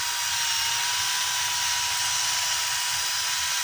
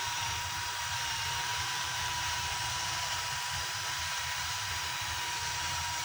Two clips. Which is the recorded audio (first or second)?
first